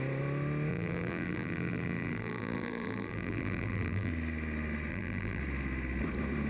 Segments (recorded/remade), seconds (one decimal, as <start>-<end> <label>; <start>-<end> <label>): 0.0-0.7 recorded; 0.7-4.1 remade; 4.1-4.9 recorded; 4.9-5.4 remade; 5.4-6.5 recorded